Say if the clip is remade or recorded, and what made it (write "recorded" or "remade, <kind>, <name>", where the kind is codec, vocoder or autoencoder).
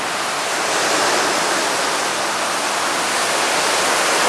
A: recorded